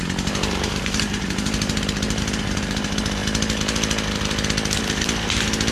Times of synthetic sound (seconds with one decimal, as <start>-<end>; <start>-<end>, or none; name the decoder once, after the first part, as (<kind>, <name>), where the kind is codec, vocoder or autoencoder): 0.0-3.2 (vocoder, BigVGAN v2); 4.8-5.7

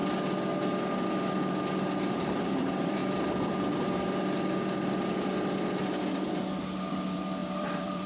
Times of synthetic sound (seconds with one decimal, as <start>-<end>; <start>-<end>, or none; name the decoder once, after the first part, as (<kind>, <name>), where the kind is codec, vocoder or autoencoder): 2.1-3.0 (vocoder, BigVGAN v2); 6.9-8.1

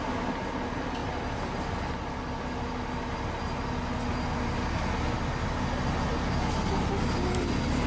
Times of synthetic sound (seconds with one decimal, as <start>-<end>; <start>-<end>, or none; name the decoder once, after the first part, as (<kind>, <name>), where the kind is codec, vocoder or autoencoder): none